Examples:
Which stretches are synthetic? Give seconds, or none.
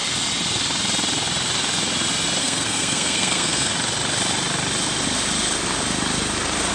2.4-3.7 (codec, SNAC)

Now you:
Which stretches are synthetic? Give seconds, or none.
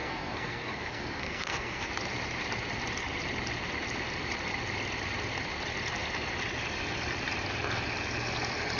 0.0-1.9 (codec, SNAC)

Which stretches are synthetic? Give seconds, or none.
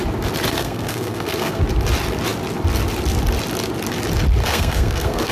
0.5-1.6 (codec, SNAC); 4.4-5.3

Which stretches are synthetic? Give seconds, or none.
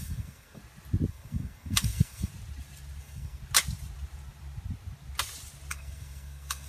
0.0-0.6 (codec, SNAC); 1.1-2.3; 3.0-3.4; 5.7-6.7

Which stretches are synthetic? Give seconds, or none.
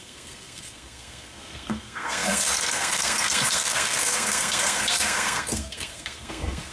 0.0-6.7 (codec, SNAC)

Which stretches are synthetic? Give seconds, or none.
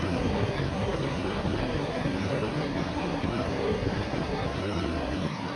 0.0-5.6 (codec, SNAC)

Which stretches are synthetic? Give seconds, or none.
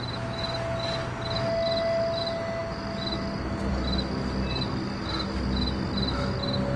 none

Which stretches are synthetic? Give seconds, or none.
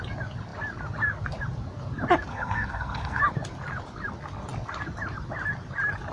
2.3-3.2 (codec, SNAC)